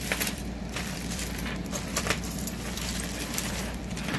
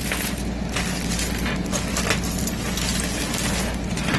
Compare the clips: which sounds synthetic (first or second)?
first